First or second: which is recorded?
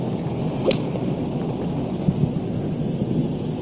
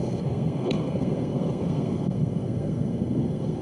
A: first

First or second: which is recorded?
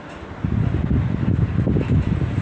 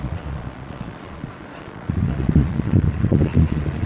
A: first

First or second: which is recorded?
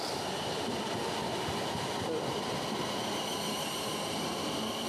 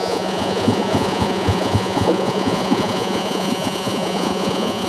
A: first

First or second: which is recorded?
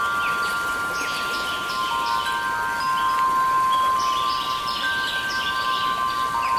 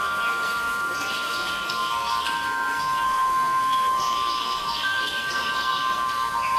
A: first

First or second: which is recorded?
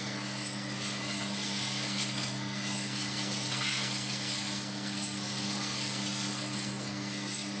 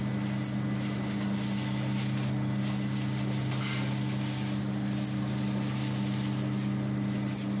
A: second